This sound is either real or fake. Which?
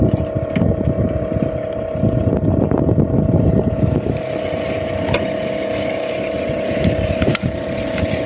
fake